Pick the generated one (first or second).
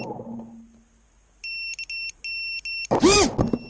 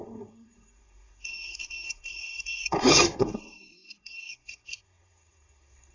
second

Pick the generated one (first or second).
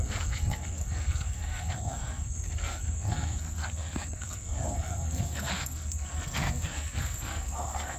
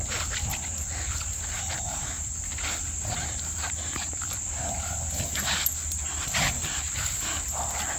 first